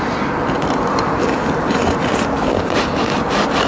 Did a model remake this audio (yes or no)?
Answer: no